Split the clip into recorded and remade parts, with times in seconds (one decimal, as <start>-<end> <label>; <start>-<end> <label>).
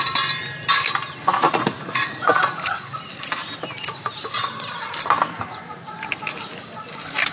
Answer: 0.0-1.2 recorded; 1.2-2.8 remade; 2.8-7.3 recorded